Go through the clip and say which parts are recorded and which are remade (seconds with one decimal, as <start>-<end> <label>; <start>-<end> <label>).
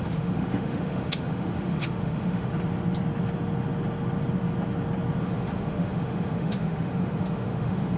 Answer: 0.0-2.5 remade; 2.5-5.2 recorded; 5.2-8.0 remade